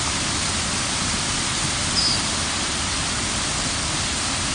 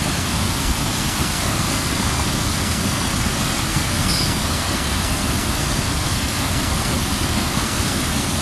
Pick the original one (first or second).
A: first